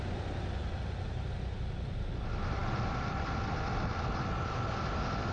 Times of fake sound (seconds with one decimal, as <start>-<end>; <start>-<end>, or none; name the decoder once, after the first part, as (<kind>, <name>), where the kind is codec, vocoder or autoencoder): none